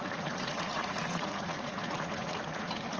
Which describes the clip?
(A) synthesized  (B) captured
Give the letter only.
A